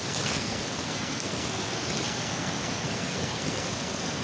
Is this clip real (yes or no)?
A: no